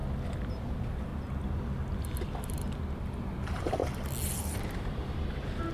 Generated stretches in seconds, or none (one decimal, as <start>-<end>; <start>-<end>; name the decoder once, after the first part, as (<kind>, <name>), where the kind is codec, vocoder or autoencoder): 0.5-1.1 (vocoder, BigVGAN v2); 3.2-3.8; 4.3-5.7